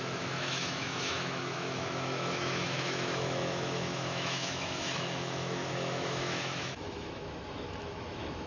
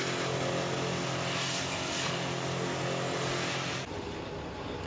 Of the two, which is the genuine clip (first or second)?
second